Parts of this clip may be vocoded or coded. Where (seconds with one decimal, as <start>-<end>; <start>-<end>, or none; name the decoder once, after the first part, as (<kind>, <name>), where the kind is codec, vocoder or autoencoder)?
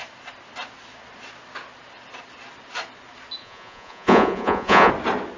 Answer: 3.4-4.9 (vocoder, Vocos)